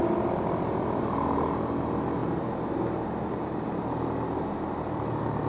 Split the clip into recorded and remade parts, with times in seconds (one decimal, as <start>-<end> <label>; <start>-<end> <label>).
0.0-2.2 recorded; 2.2-3.8 remade; 3.8-5.5 recorded